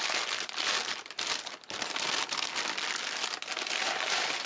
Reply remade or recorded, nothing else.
recorded